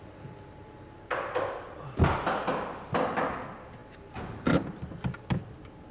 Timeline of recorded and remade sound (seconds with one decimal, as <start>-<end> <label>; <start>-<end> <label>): 0.0-5.9 recorded